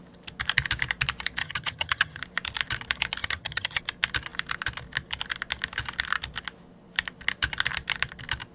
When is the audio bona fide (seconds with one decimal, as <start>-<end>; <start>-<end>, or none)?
0.0-1.4; 2.2-3.2; 3.8-8.5